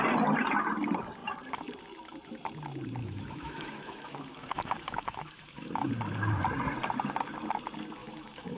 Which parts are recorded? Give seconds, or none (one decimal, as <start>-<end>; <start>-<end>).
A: 0.0-3.0; 5.9-8.0